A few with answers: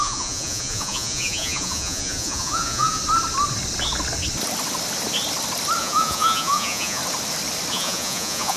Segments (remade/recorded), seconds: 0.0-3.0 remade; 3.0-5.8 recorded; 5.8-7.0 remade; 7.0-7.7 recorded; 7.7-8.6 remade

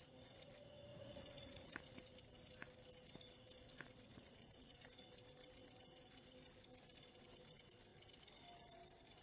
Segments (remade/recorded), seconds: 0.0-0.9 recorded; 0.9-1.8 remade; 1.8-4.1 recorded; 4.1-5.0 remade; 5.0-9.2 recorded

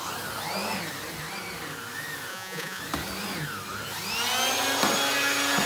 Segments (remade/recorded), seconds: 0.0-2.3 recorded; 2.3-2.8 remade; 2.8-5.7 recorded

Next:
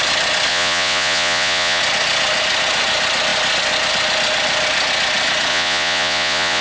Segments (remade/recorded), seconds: 0.0-0.5 recorded; 0.5-1.8 remade; 1.8-5.5 recorded; 5.5-6.6 remade